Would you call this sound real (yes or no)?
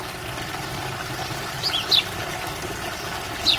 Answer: yes